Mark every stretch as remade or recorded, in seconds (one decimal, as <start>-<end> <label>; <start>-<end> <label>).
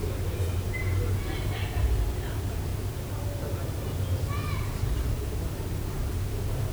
0.0-6.7 recorded